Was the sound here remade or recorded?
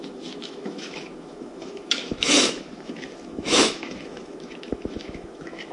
remade